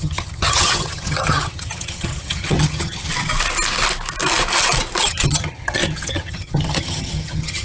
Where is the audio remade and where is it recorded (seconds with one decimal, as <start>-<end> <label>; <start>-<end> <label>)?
0.0-3.1 remade; 3.1-5.1 recorded; 5.1-7.6 remade